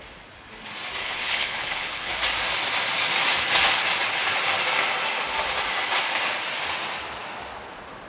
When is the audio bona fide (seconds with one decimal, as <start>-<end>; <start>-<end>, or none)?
0.0-1.0; 2.1-8.1

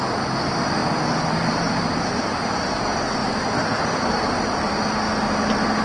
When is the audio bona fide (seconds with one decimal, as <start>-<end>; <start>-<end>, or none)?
0.0-5.8

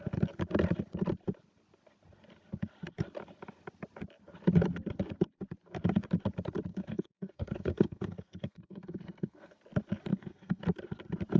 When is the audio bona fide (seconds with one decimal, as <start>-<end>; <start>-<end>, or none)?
0.0-6.7; 9.6-10.1; 10.6-11.4

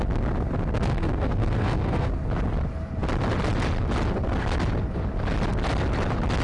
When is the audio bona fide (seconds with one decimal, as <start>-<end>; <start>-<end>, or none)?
0.0-0.9; 2.1-6.4

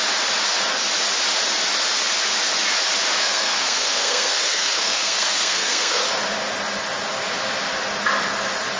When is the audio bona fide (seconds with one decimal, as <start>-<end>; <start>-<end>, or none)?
0.0-3.2; 6.0-8.8

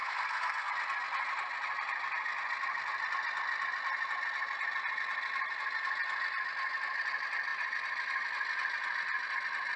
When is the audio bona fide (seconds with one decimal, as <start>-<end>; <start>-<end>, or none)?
0.7-9.8